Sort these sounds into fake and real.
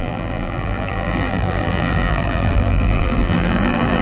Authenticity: fake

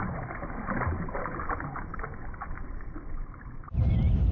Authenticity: fake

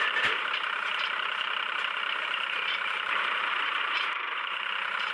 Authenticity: fake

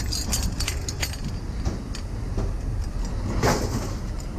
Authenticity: real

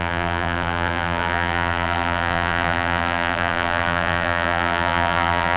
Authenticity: fake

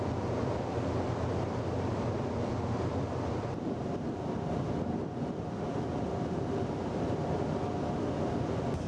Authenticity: fake